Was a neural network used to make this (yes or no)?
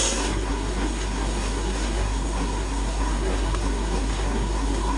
yes